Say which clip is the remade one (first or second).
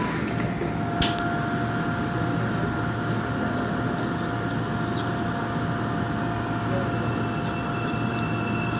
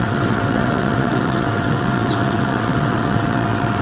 second